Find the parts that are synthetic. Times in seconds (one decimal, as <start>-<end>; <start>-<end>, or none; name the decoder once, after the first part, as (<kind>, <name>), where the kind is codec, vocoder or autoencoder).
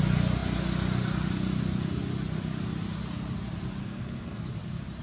3.8-4.4 (codec, SNAC)